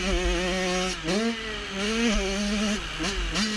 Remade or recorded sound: recorded